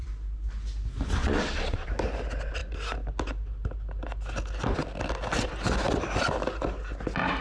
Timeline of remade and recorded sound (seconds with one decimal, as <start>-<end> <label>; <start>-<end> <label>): 0.0-1.2 recorded; 1.2-1.9 remade; 1.9-7.4 recorded